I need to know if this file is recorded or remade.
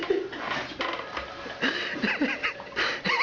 recorded